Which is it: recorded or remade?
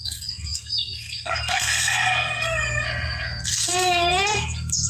remade